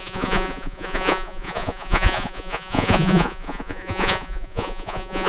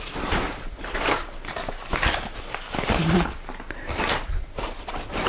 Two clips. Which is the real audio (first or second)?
second